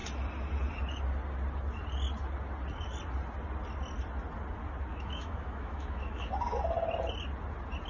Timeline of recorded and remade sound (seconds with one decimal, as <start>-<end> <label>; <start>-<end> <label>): 0.0-4.9 recorded; 4.9-6.3 remade; 6.3-7.9 recorded